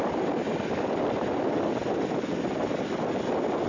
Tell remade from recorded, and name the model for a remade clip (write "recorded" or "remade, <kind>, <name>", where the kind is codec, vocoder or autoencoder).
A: recorded